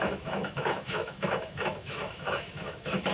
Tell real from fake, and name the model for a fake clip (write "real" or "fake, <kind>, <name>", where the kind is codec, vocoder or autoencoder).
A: fake, autoencoder, DAC-VAE